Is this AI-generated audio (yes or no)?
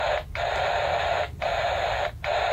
no